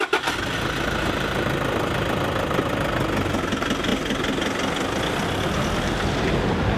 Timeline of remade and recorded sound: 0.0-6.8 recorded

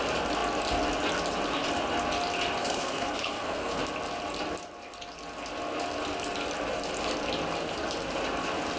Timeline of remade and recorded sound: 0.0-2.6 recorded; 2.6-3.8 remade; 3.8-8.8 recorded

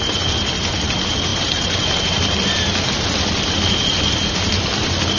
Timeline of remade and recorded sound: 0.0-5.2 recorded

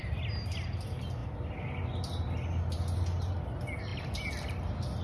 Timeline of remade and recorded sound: 0.0-5.0 recorded

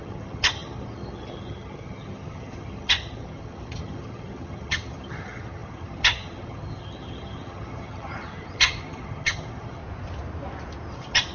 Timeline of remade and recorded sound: 0.0-9.8 remade; 9.8-10.9 recorded; 10.9-11.3 remade

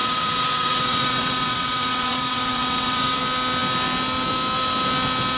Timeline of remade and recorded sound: 0.0-3.2 remade; 3.2-5.4 recorded

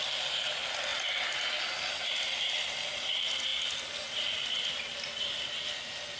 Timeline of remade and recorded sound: 0.0-6.2 recorded